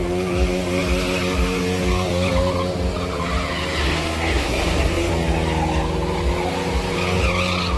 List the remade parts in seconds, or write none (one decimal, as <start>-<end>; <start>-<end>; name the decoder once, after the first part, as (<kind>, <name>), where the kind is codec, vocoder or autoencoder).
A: 3.8-5.1 (codec, SNAC)